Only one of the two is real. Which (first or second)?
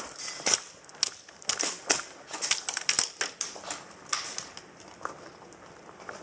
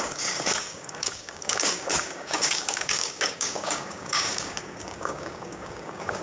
first